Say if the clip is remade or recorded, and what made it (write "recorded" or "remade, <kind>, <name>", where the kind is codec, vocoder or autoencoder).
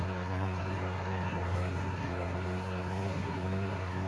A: remade, codec, SNAC